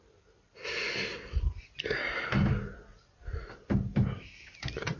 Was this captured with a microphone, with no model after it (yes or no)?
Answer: yes